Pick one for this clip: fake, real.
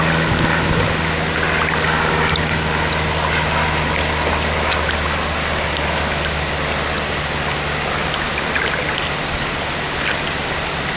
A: real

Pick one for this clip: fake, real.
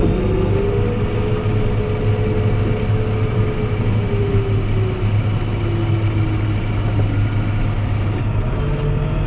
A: real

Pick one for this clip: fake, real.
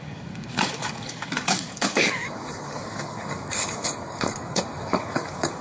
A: fake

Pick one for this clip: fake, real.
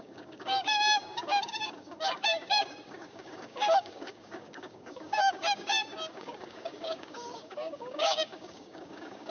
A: fake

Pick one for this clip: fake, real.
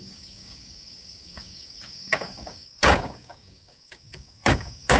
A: fake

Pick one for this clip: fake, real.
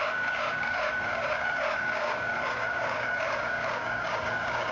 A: fake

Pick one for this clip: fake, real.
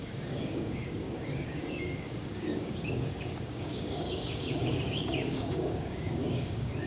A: fake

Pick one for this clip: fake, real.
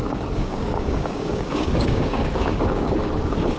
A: fake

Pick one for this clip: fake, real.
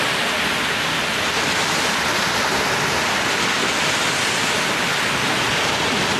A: real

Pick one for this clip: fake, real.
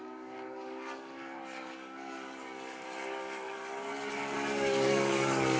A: fake